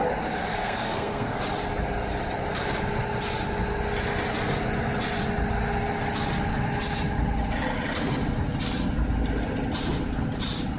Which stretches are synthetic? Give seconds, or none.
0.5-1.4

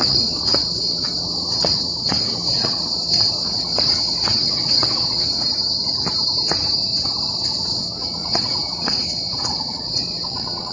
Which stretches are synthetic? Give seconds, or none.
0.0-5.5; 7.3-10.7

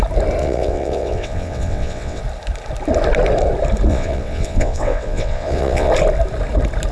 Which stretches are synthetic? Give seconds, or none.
0.4-2.2; 3.9-5.9

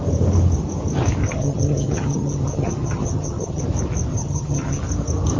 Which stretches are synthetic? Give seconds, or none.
1.2-3.6; 4.1-4.8